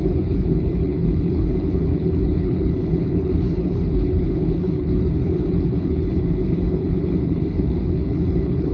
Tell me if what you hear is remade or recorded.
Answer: remade